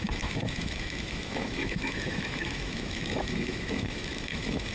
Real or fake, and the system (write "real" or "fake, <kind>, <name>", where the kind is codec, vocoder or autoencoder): fake, autoencoder, DAC-VAE